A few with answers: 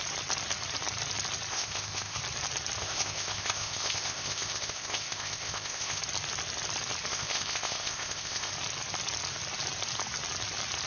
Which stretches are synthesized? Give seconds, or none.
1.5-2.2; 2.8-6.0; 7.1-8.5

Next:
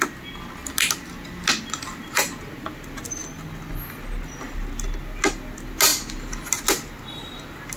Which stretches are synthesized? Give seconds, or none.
none

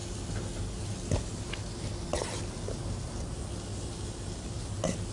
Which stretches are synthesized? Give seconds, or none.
none

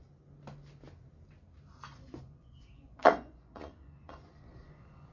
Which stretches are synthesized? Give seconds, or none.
1.9-5.1

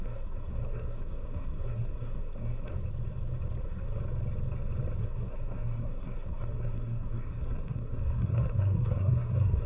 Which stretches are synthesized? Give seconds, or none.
0.0-2.7; 3.6-4.0; 5.0-9.7

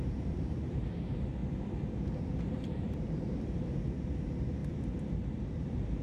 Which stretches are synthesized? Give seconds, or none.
0.0-1.4; 2.4-4.6; 5.3-6.0

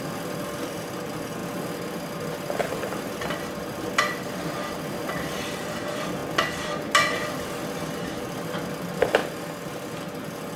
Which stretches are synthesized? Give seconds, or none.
0.0-1.4; 4.8-6.2; 8.2-9.2

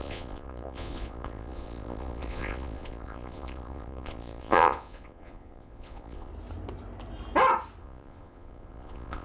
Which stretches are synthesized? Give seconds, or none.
0.0-6.3; 7.8-9.2